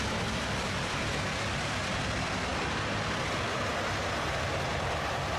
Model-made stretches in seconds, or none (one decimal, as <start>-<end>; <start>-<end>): none